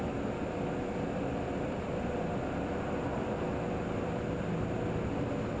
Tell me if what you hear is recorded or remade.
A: recorded